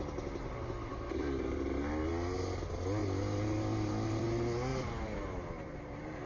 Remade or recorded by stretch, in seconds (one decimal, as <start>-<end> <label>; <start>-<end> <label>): 0.0-0.9 recorded; 0.9-2.1 remade; 2.1-4.7 recorded; 4.7-6.3 remade